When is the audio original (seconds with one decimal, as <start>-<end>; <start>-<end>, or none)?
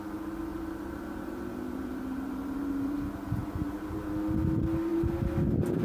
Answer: 0.0-0.5; 3.0-3.4; 4.1-5.8